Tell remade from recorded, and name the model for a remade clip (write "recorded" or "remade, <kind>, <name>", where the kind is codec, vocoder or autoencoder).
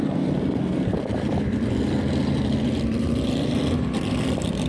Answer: remade, vocoder, BigVGAN v2